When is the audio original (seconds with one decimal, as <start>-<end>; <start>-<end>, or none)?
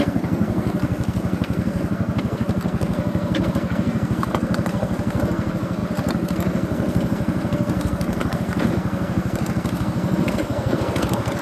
none